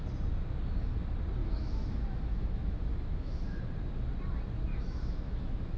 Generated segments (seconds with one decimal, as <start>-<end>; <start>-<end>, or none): 1.4-3.6; 4.7-5.8